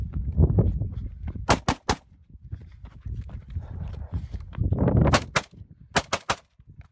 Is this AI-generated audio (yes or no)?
no